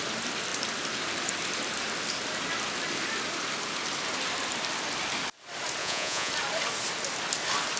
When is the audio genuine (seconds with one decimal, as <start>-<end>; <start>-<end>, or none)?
0.0-5.8; 6.3-7.8